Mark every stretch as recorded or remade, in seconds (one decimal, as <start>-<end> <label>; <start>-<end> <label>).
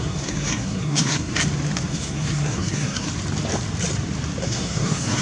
0.0-1.3 remade; 1.3-1.9 recorded; 1.9-3.1 remade; 3.1-4.4 recorded; 4.4-5.2 remade